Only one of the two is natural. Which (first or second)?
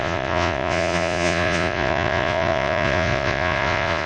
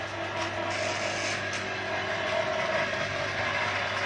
second